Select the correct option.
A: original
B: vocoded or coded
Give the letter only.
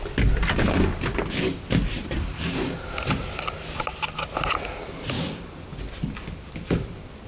A